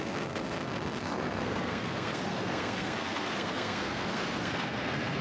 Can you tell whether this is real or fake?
fake